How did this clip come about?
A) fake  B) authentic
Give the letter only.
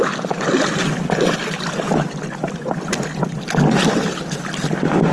B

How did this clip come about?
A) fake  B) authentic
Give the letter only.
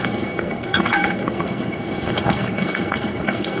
A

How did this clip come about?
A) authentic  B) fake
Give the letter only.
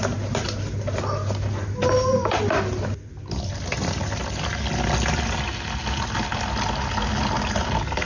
A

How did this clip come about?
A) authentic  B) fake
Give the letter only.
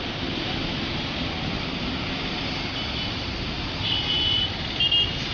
A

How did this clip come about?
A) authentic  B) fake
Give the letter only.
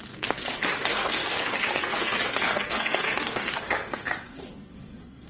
B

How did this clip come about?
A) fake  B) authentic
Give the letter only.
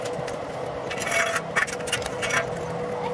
B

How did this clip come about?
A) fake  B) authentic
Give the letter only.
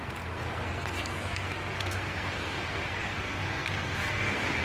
A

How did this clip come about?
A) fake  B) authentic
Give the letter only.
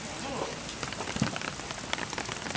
B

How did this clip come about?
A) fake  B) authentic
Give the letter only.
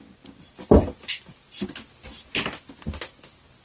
B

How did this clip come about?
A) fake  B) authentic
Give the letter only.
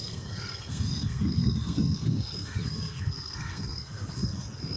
A